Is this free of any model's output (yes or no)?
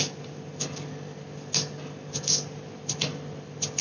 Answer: yes